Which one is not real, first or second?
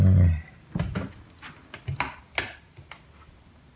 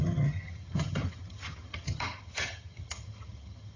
second